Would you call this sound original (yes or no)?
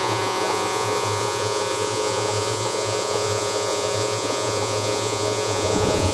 no